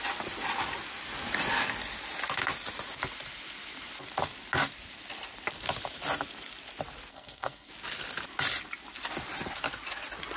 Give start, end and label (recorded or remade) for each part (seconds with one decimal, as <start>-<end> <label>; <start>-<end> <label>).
0.0-7.1 recorded; 7.1-7.7 remade; 7.7-10.4 recorded

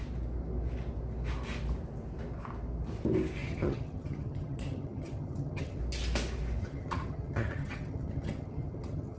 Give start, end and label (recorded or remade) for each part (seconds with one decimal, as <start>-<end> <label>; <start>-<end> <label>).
0.0-3.4 recorded; 3.4-5.8 remade; 5.8-6.6 recorded; 6.6-9.2 remade

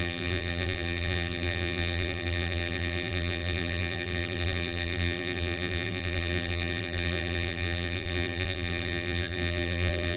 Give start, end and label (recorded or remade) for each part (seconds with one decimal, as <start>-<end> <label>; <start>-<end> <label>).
0.0-10.2 remade

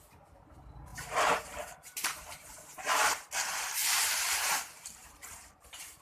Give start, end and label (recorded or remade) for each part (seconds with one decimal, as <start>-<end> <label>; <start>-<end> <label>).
0.0-0.9 recorded; 0.9-3.3 remade; 3.3-3.8 recorded; 3.8-6.0 remade

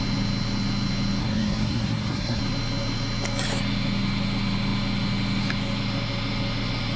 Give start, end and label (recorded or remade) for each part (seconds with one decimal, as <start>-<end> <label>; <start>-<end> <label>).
0.0-1.2 recorded; 1.2-2.4 remade; 2.4-7.0 recorded

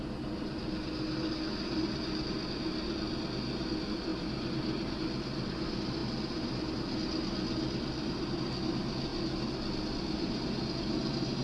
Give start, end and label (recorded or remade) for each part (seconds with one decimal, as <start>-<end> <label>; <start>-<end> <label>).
0.0-4.1 recorded; 4.1-5.0 remade; 5.0-11.4 recorded

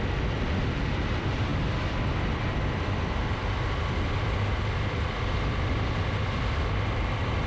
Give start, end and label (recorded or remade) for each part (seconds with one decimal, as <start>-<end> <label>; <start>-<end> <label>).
0.0-7.5 remade